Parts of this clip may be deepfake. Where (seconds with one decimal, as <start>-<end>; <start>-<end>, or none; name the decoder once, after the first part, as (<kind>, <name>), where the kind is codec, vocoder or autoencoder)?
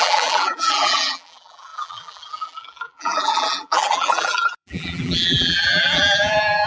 0.0-6.7 (vocoder, BigVGAN v2)